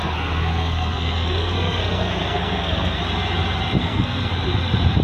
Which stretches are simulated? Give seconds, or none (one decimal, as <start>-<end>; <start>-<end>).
0.0-3.0; 3.8-4.3